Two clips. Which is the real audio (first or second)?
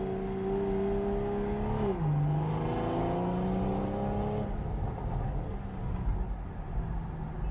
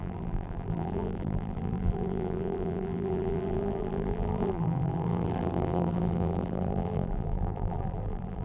first